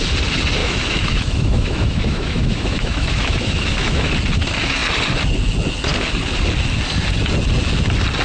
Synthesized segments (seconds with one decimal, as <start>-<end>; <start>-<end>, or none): 0.6-4.1